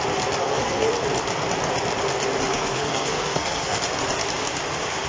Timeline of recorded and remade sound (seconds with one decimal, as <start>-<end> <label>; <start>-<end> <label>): 0.0-0.4 recorded; 0.4-0.9 remade; 0.9-2.5 recorded; 2.5-3.8 remade; 3.8-5.1 recorded